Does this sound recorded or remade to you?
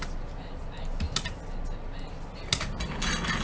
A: recorded